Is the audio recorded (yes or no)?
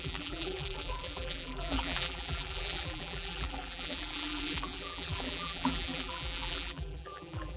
no